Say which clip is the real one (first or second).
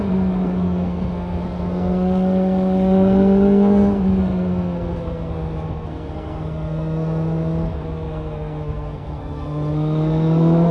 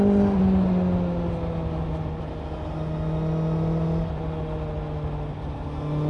second